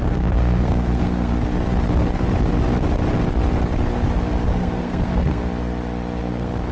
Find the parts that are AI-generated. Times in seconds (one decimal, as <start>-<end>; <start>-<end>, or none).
0.0-1.3; 4.5-5.4; 6.2-6.7